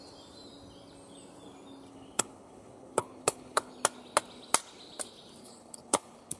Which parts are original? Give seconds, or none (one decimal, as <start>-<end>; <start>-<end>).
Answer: 0.0-1.9; 3.7-5.4